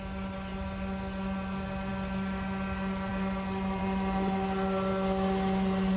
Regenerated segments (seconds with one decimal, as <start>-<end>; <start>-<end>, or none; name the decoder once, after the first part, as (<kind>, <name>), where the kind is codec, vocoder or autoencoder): none